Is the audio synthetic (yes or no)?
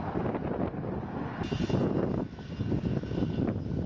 no